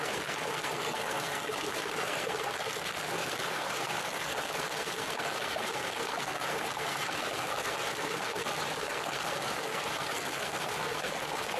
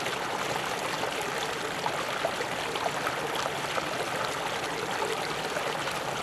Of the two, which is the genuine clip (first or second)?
second